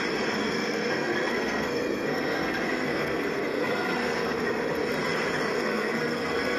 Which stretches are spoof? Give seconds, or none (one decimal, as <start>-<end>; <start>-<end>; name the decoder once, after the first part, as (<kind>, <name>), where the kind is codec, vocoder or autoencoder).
0.4-4.4 (codec, SNAC); 5.5-6.6